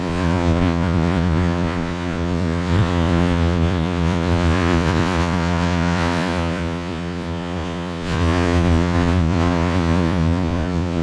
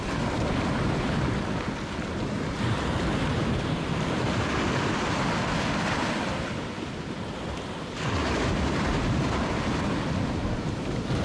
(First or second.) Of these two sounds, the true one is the second